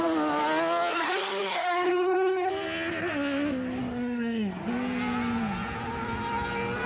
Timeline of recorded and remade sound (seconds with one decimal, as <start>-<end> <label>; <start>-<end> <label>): 0.0-0.9 recorded; 0.9-2.5 remade; 2.5-3.8 recorded; 3.8-4.6 remade; 4.6-6.9 recorded